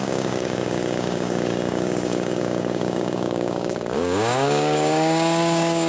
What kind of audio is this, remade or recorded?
remade